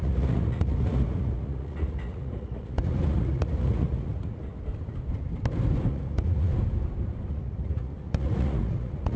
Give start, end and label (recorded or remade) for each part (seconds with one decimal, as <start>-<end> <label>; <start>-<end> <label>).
0.0-4.5 remade; 4.5-5.9 recorded; 5.9-6.5 remade; 6.5-7.3 recorded; 7.3-9.2 remade